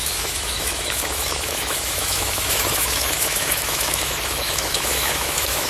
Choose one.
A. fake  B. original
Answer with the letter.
A